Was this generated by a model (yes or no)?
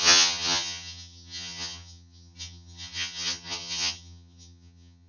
yes